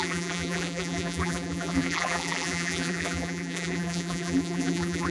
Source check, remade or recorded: remade